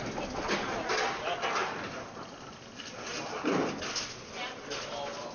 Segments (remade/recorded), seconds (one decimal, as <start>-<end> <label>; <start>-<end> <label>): 0.0-5.3 recorded